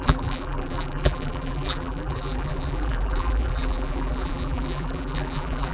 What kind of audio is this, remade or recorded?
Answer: remade